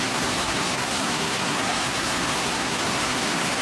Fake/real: fake